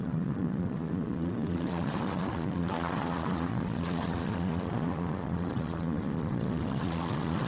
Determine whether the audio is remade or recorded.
remade